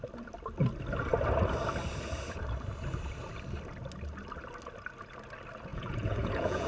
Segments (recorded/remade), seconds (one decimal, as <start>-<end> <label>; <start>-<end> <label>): 0.0-5.7 recorded; 5.7-6.7 remade